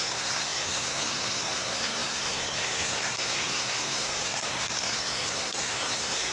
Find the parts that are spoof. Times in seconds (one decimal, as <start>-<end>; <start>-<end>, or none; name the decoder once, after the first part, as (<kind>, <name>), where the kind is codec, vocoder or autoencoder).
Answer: 0.0-6.3 (codec, SNAC)